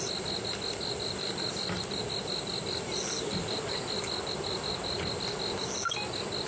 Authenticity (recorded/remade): recorded